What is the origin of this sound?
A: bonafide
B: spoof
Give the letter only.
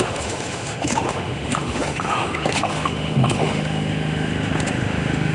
B